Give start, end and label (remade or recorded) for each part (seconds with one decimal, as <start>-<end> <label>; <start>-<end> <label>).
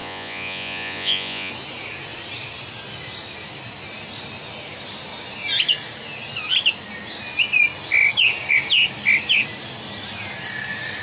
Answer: 0.0-1.5 remade; 1.5-11.0 recorded